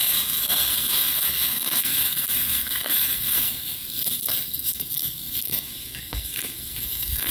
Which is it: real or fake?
fake